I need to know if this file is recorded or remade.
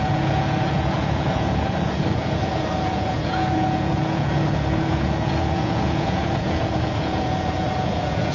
remade